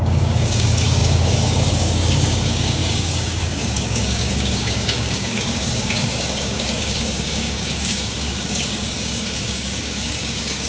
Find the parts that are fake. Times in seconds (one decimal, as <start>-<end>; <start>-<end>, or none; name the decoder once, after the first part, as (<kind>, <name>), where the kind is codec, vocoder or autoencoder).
0.0-10.7 (codec, DAC)